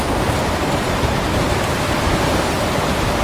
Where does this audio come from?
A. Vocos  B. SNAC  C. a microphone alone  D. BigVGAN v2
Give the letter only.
D